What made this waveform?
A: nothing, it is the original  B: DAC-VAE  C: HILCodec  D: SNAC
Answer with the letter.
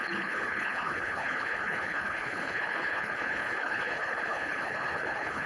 C